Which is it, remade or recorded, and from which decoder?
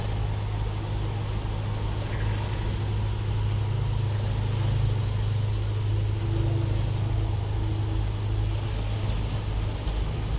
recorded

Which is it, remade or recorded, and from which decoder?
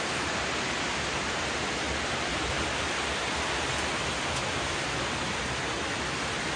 recorded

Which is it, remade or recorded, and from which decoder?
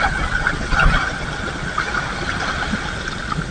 recorded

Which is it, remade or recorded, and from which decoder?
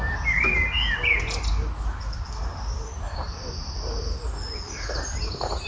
recorded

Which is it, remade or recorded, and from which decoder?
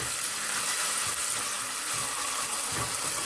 recorded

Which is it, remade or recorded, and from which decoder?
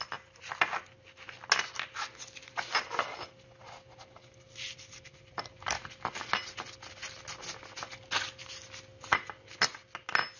recorded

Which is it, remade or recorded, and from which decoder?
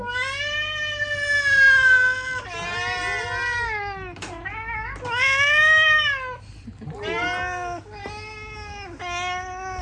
recorded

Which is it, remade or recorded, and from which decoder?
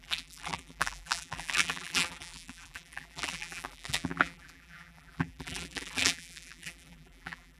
remade, vocoder, BigVGAN v2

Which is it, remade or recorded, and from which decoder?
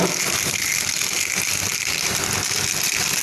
recorded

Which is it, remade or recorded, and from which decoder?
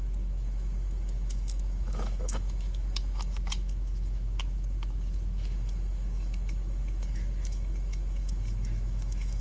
remade, autoencoder, DAC-VAE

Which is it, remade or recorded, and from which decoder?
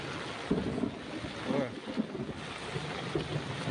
recorded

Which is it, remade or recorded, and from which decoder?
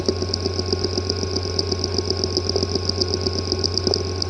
recorded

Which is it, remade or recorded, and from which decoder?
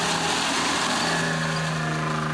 recorded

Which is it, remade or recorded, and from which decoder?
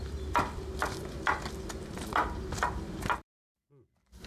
remade, vocoder, BigVGAN v2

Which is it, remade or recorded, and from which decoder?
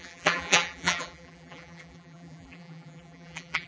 remade, vocoder, BigVGAN v2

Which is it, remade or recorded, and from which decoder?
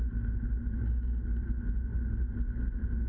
recorded